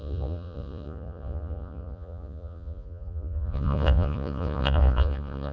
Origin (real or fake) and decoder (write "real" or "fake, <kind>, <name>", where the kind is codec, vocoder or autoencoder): fake, vocoder, Vocos